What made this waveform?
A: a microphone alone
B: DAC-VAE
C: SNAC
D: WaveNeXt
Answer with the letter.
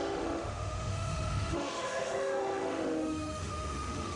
B